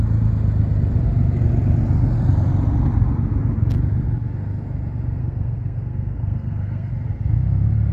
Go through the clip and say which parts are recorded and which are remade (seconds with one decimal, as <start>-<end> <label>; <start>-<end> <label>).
0.0-5.2 recorded; 5.2-6.9 remade; 6.9-7.9 recorded